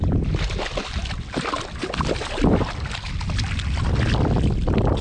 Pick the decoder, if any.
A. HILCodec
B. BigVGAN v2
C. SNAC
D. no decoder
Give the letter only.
D